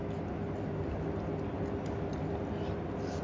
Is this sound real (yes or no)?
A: yes